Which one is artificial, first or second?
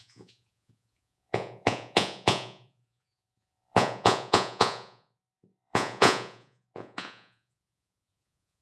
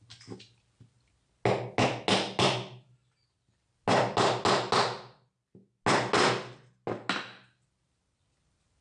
first